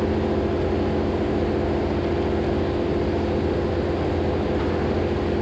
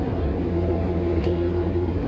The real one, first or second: first